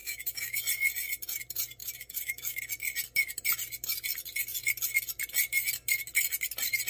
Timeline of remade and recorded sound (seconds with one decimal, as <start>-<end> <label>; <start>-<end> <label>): 0.0-0.6 remade; 0.6-1.8 recorded; 1.8-2.6 remade; 2.6-6.9 recorded